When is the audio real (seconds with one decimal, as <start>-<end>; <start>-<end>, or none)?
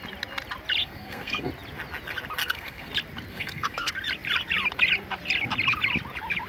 0.0-0.8; 1.5-2.4; 2.9-3.3; 3.9-6.5